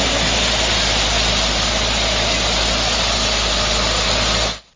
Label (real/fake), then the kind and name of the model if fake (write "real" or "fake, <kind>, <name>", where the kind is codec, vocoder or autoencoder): real